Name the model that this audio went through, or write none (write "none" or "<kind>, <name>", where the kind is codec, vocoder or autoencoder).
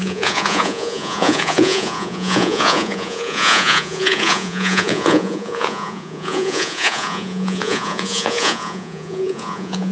vocoder, Vocos